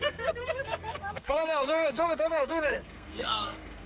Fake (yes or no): yes